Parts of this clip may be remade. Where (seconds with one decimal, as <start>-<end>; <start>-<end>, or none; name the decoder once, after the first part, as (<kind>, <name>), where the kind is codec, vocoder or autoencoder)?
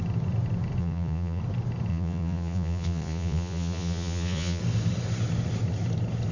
0.8-1.4 (vocoder, Vocos); 1.9-4.6